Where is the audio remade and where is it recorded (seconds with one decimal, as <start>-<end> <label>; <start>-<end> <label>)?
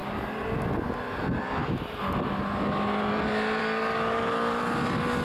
0.0-3.6 recorded; 3.6-4.6 remade; 4.6-5.2 recorded